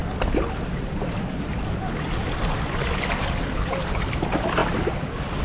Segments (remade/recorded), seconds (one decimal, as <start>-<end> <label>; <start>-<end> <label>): 0.0-5.4 recorded